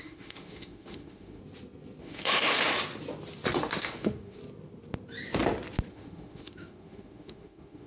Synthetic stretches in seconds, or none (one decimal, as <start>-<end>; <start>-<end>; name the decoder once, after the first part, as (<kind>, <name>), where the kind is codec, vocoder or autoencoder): 0.0-1.4 (autoencoder, DAC-VAE); 2.0-2.7; 3.8-4.4; 5.9-7.9